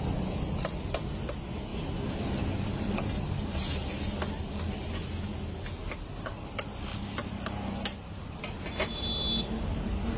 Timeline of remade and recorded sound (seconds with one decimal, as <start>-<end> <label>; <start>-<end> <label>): 0.0-10.2 recorded